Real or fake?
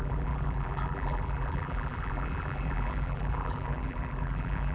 fake